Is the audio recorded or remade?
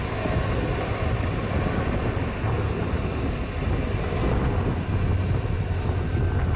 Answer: recorded